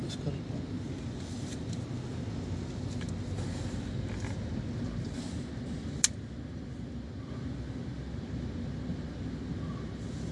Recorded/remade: recorded